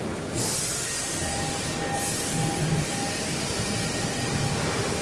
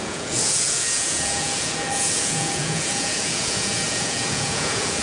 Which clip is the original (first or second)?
first